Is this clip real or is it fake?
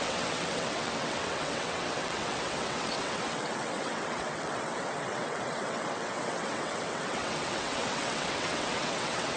fake